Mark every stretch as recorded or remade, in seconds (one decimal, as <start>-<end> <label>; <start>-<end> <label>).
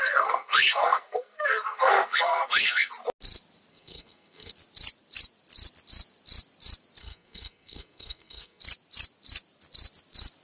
0.0-2.9 remade; 2.9-3.7 recorded; 3.7-4.5 remade; 4.5-7.0 recorded; 7.0-8.6 remade; 8.6-10.4 recorded